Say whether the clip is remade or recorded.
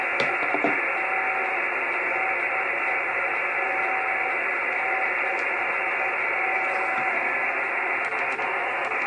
recorded